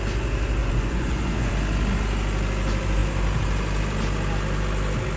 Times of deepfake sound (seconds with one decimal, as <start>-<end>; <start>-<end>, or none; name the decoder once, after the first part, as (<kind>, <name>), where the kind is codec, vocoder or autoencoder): 0.6-1.5 (vocoder, Vocos)